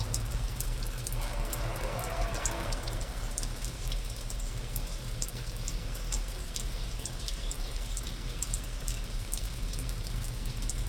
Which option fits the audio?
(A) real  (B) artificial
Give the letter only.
B